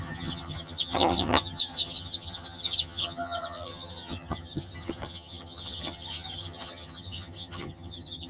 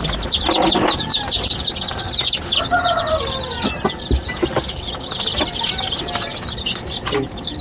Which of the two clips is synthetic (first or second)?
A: first